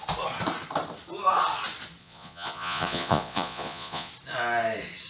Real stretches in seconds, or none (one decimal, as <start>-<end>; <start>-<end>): 0.0-2.0; 4.1-5.1